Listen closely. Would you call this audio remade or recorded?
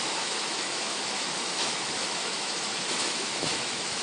remade